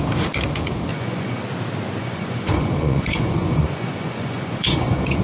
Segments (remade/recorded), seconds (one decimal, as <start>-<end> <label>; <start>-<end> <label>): 0.0-0.9 recorded; 0.9-1.4 remade; 1.4-2.0 recorded; 2.0-5.2 remade